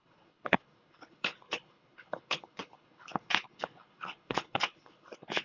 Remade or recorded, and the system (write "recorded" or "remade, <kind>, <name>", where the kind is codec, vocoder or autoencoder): remade, codec, HILCodec